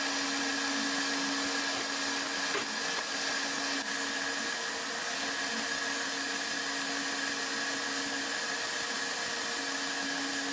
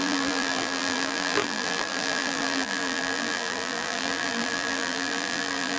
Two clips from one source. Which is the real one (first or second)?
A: first